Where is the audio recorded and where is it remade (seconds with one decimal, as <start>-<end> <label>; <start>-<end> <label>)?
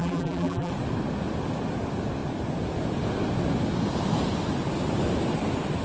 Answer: 0.0-0.7 remade; 0.7-5.8 recorded